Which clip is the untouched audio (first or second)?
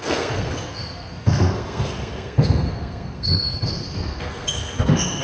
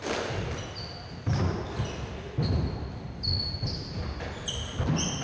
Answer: second